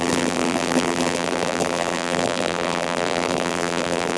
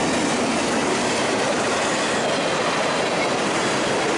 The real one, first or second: second